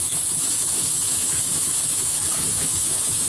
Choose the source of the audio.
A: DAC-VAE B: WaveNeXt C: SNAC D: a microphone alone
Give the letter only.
A